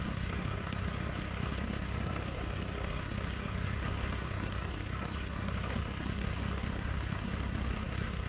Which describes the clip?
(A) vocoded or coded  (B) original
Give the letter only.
A